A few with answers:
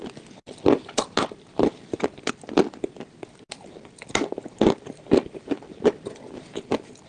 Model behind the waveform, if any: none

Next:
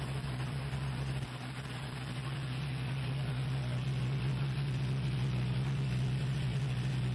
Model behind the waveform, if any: none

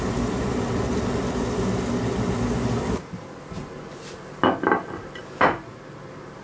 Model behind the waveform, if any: none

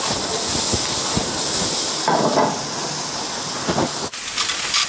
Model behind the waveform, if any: none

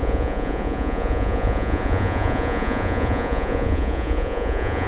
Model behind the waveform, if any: vocoder, Vocos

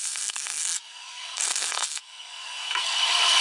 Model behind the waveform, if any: codec, SNAC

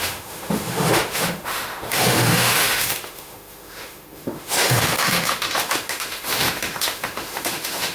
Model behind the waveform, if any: autoencoder, DAC-VAE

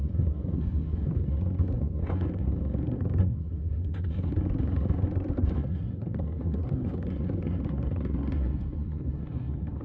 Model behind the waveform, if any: codec, SNAC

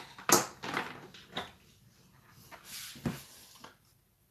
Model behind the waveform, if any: none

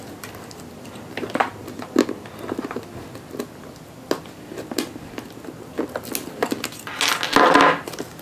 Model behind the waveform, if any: none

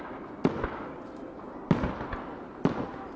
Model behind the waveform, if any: none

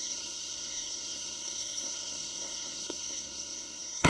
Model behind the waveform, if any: codec, SNAC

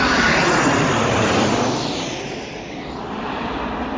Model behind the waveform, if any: none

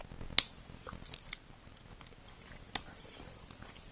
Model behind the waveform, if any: none